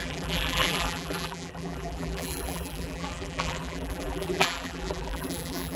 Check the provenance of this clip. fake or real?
fake